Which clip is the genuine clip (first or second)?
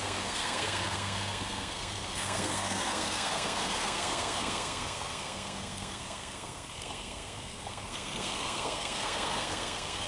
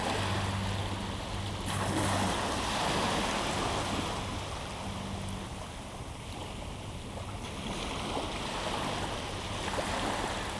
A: second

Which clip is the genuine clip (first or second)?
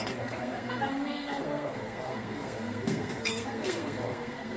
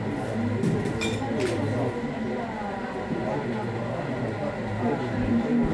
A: second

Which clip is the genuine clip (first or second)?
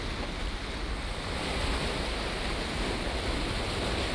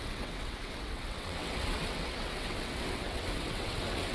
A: first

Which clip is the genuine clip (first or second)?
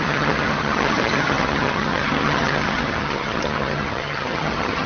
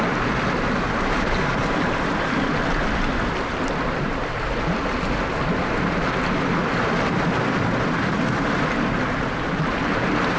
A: second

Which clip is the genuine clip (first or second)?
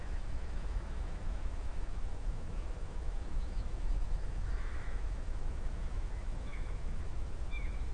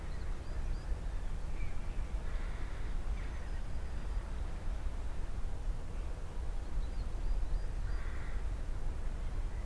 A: second